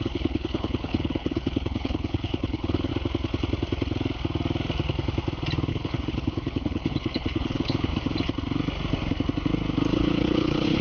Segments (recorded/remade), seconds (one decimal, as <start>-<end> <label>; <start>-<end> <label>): 0.0-2.9 remade; 2.9-5.7 recorded; 5.7-7.9 remade; 7.9-9.9 recorded; 9.9-10.8 remade